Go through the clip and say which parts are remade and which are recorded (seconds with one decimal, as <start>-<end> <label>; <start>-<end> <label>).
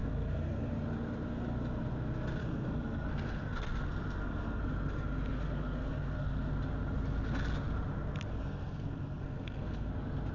0.0-0.7 remade; 0.7-2.4 recorded; 2.4-4.6 remade; 4.6-5.3 recorded; 5.3-6.5 remade; 6.5-8.3 recorded; 8.3-9.9 remade; 9.9-10.3 recorded